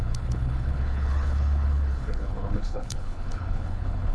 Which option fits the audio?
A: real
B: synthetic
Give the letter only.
B